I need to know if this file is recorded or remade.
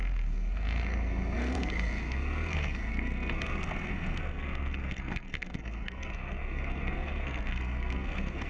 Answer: remade